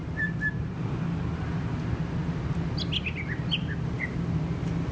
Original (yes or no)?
yes